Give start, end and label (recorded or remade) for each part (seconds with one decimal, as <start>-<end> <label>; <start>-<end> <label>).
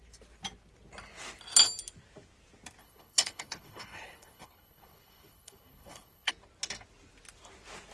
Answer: 0.0-2.8 recorded; 2.8-6.3 remade; 6.3-7.9 recorded